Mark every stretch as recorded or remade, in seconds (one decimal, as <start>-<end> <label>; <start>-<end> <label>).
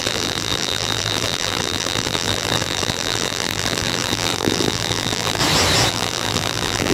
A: 0.0-5.4 remade; 5.4-5.9 recorded; 5.9-6.9 remade